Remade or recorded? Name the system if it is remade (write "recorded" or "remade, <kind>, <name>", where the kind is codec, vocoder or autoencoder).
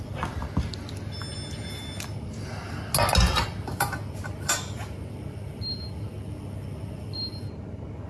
recorded